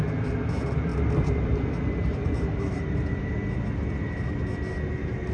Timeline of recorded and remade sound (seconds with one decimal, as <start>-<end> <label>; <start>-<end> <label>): 0.0-0.9 recorded; 0.9-3.3 remade; 3.3-5.3 recorded